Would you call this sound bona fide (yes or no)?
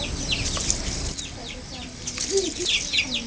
yes